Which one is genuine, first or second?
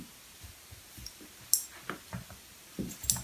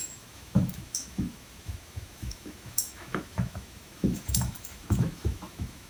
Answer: first